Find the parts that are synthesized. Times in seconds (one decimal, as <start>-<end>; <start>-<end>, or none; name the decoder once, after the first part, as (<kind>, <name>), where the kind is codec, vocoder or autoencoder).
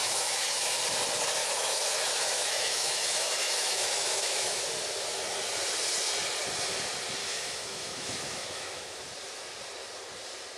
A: 0.0-0.8 (autoencoder, DAC-VAE); 1.4-4.6; 7.2-9.0